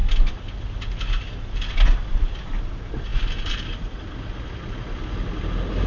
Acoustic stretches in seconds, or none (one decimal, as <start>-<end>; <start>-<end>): 0.0-5.9